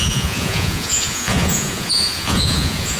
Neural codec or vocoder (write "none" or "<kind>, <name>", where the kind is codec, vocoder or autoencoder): vocoder, Vocos